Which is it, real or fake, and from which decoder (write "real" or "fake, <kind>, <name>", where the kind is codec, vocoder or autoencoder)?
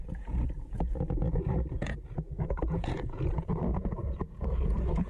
fake, vocoder, Vocos